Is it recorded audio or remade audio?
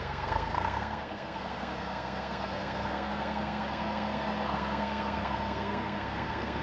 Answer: remade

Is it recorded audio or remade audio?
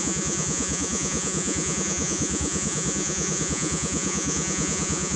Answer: remade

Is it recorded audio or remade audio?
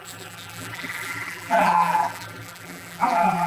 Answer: remade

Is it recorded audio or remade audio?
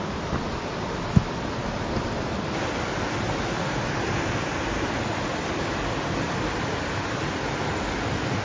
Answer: recorded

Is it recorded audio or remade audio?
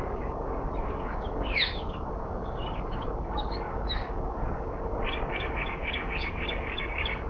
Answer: remade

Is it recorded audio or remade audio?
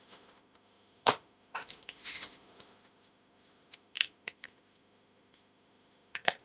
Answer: remade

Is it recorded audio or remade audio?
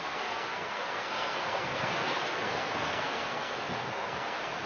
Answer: remade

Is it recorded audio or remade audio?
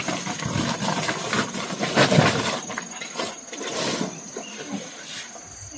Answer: remade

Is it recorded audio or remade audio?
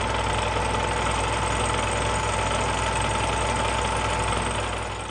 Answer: recorded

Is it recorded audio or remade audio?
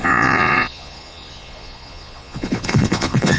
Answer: remade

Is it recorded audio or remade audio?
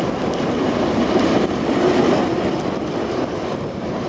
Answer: recorded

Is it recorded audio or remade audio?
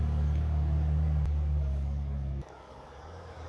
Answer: remade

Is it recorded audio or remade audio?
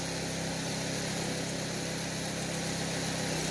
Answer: recorded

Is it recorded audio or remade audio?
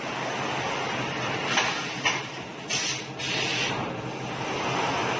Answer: recorded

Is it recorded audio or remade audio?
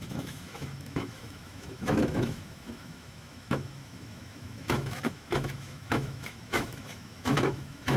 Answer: remade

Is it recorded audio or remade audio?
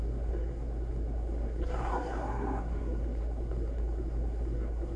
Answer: remade